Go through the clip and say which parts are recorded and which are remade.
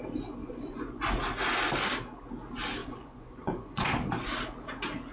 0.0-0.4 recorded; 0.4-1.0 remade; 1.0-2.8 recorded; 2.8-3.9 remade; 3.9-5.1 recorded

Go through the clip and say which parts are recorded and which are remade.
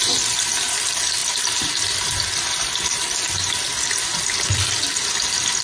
0.0-5.6 recorded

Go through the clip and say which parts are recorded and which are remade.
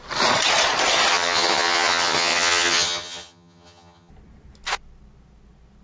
0.0-1.1 recorded; 1.1-4.1 remade; 4.1-5.8 recorded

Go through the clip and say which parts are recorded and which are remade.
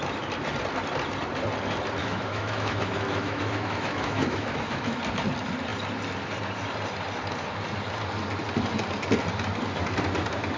0.0-2.0 recorded; 2.0-5.0 remade; 5.0-10.6 recorded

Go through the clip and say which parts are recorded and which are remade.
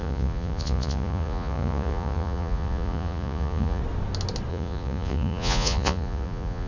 0.0-3.8 remade; 3.8-4.5 recorded; 4.5-6.7 remade